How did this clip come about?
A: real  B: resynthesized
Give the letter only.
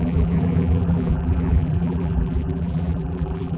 B